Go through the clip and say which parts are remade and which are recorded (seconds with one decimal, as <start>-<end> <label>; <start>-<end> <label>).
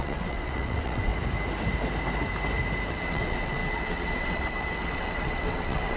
0.0-1.1 remade; 1.1-2.9 recorded; 2.9-6.0 remade